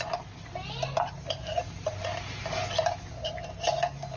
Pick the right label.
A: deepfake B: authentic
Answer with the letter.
B